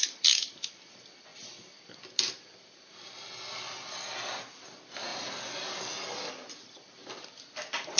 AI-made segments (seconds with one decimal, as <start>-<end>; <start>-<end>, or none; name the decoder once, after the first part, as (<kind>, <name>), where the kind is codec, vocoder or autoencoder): none